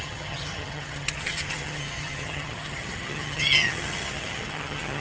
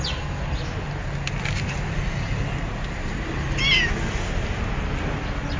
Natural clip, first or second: second